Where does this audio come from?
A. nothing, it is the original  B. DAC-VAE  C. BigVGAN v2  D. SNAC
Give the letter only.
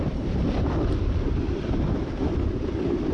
C